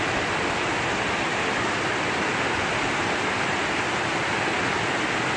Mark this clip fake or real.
real